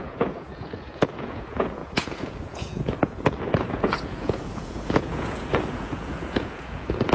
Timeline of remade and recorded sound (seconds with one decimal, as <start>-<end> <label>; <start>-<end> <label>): 0.0-7.1 remade